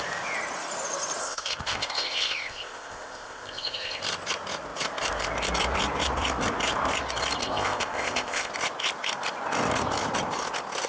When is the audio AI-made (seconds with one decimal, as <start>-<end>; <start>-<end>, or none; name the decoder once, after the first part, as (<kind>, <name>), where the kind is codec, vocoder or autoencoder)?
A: 1.2-4.0 (codec, ZipCodec); 7.4-8.5